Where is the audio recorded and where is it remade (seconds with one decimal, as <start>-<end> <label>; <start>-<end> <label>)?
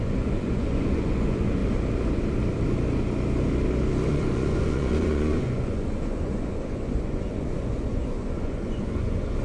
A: 0.0-1.6 remade; 1.6-4.1 recorded; 4.1-9.4 remade